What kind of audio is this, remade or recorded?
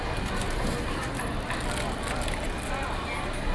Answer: recorded